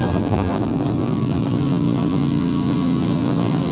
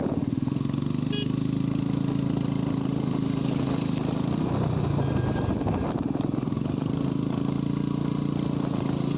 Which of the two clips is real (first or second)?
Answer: second